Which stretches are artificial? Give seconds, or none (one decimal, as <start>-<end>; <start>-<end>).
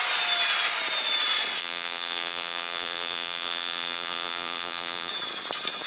1.6-5.1